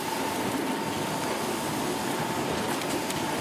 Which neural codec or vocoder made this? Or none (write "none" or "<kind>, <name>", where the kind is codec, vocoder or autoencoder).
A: none